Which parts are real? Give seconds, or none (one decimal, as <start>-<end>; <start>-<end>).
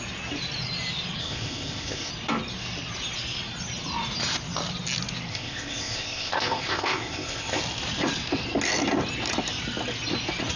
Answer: 0.0-1.2; 2.1-5.3; 7.6-10.6